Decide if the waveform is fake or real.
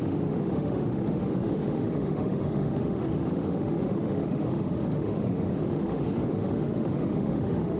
fake